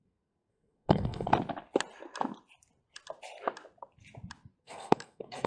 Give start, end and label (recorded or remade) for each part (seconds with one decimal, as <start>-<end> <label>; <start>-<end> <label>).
0.0-1.3 remade; 1.3-4.6 recorded; 4.6-5.5 remade